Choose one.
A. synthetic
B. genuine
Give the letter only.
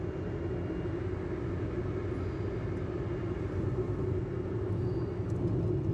B